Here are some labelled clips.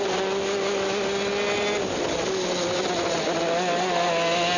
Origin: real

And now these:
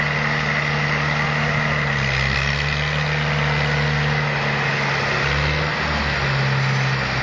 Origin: real